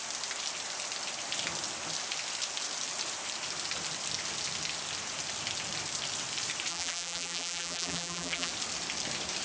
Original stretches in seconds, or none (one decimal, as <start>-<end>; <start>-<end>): 0.0-6.7; 8.5-9.4